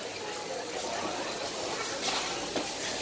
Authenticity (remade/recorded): recorded